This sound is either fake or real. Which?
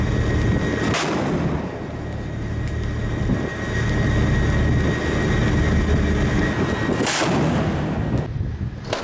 real